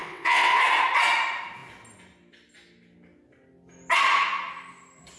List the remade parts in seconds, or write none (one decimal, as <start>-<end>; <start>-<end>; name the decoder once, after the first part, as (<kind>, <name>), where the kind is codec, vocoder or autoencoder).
0.0-0.6 (vocoder, WaveNeXt)

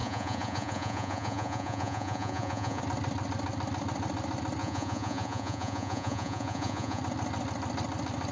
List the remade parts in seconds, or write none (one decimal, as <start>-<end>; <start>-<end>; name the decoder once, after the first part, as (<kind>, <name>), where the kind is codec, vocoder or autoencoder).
0.0-2.8 (vocoder, Vocos); 4.6-7.0

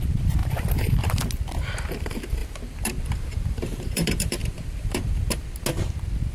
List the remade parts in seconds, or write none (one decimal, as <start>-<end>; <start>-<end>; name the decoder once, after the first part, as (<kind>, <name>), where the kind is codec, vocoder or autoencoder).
2.4-5.2 (vocoder, BigVGAN v2)

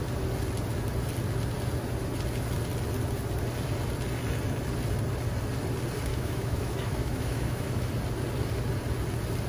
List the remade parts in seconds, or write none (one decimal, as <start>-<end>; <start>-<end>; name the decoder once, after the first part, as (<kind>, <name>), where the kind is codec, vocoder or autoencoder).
6.1-7.9 (autoencoder, DAC-VAE)

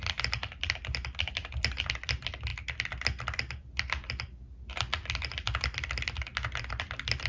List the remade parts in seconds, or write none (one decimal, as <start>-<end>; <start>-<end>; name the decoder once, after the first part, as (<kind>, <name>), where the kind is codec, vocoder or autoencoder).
none